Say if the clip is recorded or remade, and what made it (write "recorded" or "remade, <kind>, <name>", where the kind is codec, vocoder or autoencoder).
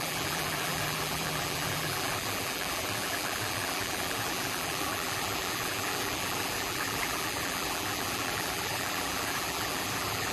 remade, vocoder, BigVGAN v2